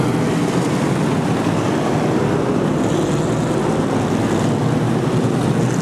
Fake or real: real